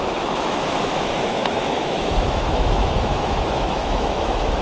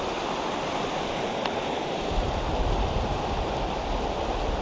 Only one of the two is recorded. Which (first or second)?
second